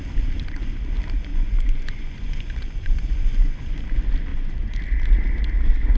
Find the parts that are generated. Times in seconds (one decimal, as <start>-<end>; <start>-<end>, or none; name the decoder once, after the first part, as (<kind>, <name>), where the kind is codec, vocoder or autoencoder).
1.3-3.8 (vocoder, Vocos); 4.3-4.8